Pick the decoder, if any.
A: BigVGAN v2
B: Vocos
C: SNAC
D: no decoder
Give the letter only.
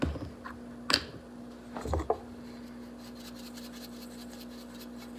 D